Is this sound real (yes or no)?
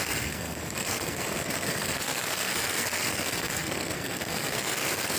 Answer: no